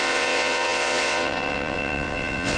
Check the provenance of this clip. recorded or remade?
remade